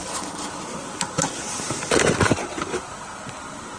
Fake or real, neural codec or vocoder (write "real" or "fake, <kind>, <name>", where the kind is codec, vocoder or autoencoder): real